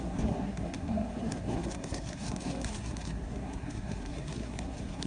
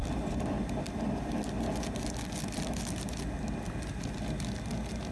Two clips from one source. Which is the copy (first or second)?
first